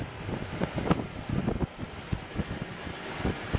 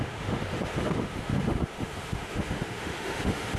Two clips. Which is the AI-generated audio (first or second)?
second